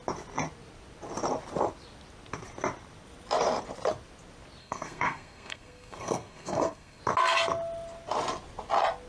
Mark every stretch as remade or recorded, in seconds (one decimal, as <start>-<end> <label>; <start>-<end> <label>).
0.0-4.6 recorded; 4.6-7.0 remade; 7.0-9.1 recorded

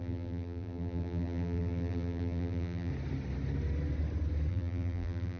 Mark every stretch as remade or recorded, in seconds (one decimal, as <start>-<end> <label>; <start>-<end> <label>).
0.0-2.9 remade; 2.9-4.5 recorded; 4.5-5.4 remade

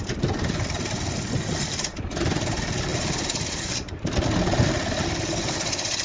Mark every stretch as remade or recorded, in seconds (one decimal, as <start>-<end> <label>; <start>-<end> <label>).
0.0-2.9 recorded; 2.9-4.0 remade; 4.0-6.0 recorded

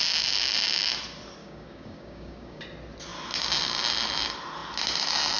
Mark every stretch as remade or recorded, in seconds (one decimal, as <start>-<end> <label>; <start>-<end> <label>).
0.0-1.4 recorded; 1.4-2.6 remade; 2.6-5.4 recorded

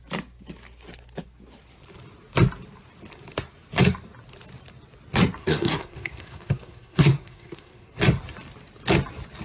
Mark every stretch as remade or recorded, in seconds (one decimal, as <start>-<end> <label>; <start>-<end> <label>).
0.0-5.4 recorded; 5.4-7.9 remade; 7.9-9.4 recorded

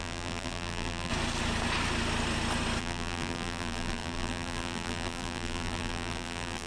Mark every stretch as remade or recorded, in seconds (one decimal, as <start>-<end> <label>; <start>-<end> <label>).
0.0-1.1 remade; 1.1-2.8 recorded; 2.8-6.7 remade

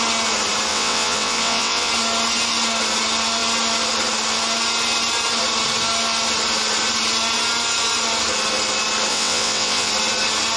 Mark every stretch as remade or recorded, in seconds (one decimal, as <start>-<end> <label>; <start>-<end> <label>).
0.0-0.7 recorded; 0.7-1.9 remade; 1.9-9.1 recorded; 9.1-9.9 remade; 9.9-10.6 recorded

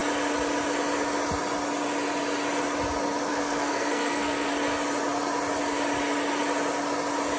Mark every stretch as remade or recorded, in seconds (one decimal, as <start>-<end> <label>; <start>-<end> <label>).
0.0-3.3 recorded; 3.3-4.5 remade; 4.5-7.4 recorded